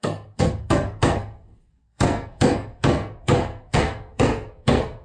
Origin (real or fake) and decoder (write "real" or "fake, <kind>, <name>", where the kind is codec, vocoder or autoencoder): fake, codec, SNAC